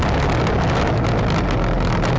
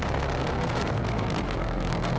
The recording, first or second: first